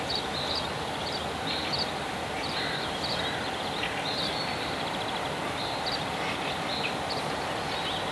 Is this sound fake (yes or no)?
no